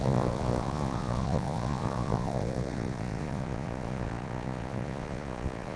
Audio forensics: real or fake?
fake